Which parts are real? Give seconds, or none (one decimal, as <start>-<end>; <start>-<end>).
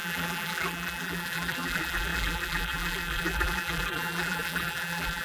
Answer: none